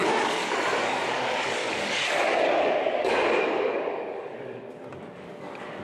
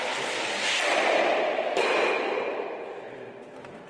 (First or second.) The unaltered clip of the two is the second